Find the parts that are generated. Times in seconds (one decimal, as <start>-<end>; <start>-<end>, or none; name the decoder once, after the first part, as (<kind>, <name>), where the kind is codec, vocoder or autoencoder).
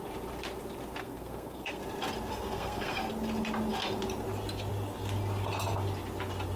1.0-1.8 (codec, SNAC); 2.3-3.0